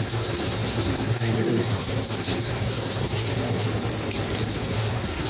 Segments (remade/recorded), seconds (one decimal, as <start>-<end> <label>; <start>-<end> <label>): 0.0-3.7 remade; 3.7-4.5 recorded; 4.5-5.3 remade